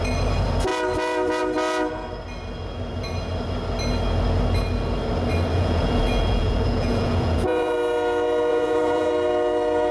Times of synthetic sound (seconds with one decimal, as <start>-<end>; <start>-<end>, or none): 5.5-7.7; 8.5-9.1